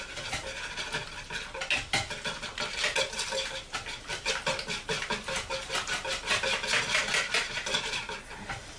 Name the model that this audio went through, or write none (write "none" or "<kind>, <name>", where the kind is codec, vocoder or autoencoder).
none